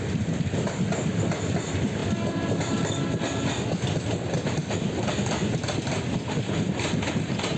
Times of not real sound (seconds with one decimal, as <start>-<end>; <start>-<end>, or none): none